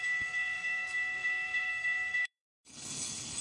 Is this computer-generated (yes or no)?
yes